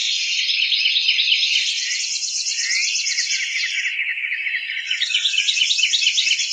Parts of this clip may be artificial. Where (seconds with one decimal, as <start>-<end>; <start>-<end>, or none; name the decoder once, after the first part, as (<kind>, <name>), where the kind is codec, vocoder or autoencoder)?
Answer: 4.1-5.7 (vocoder, Vocos)